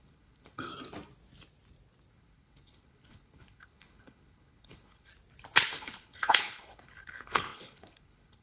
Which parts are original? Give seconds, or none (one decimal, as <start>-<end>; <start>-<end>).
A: 0.7-2.1; 5.1-5.7

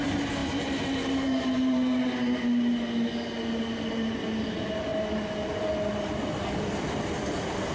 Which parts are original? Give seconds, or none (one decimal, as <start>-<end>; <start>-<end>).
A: 0.0-7.7

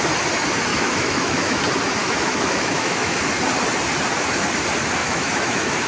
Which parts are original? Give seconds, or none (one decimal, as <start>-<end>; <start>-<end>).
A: 0.0-0.7; 1.6-2.0; 3.2-5.0